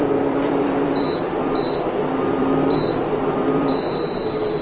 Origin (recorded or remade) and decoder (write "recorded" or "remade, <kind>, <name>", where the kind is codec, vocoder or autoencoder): remade, vocoder, BigVGAN v2